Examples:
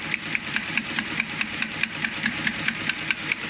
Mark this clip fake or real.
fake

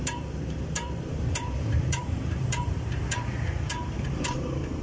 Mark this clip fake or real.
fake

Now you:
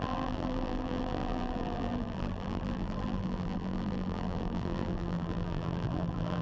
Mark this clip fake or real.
fake